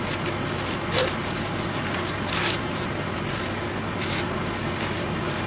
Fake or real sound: real